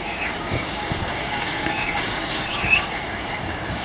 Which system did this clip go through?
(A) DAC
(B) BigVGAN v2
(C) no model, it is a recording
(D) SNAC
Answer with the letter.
A